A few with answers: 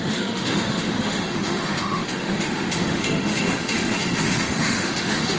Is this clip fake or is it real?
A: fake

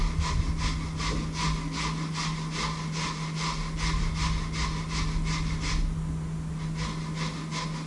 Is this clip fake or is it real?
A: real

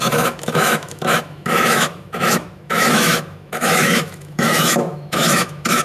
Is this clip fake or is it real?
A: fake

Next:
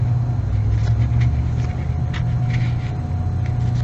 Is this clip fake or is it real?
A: real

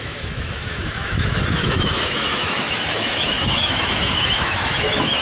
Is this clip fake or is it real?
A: fake